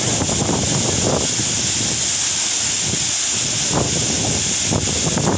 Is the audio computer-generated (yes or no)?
no